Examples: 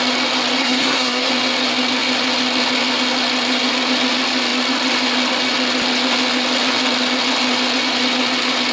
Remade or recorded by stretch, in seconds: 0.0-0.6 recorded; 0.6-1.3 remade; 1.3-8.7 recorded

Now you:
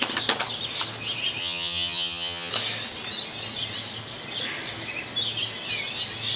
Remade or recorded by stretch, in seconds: 0.0-1.4 recorded; 1.4-2.5 remade; 2.5-6.4 recorded

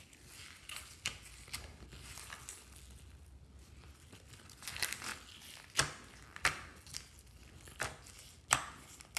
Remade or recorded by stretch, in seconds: 0.0-9.2 recorded